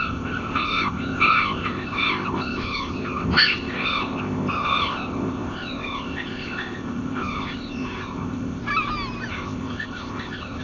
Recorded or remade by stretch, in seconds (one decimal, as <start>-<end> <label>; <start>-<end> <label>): 0.0-8.6 remade; 8.6-9.3 recorded; 9.3-10.6 remade